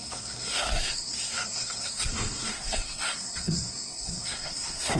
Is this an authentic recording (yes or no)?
no